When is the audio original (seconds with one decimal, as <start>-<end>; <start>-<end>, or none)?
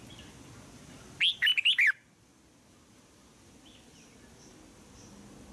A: 0.0-5.5